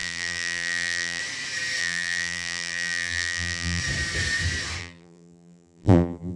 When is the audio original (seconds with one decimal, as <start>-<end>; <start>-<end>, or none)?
1.2-1.8; 3.8-4.8